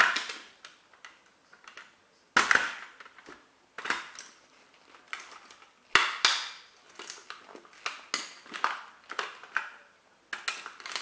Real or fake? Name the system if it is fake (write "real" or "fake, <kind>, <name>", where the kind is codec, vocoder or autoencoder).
real